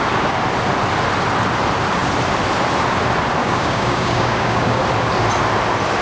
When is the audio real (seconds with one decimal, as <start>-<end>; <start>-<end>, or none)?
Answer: 0.0-3.4; 4.8-6.0

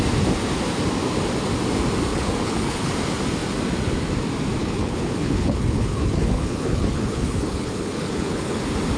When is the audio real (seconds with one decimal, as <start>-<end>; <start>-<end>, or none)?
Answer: 0.0-2.1; 2.9-4.6; 8.6-9.0

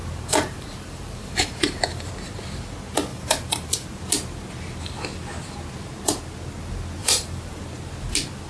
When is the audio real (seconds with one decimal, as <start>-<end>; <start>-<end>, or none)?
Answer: 2.1-3.1; 4.0-7.0; 7.6-8.5

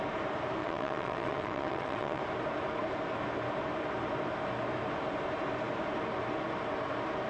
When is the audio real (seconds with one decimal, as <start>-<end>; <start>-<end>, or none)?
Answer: 0.0-0.6; 2.2-7.3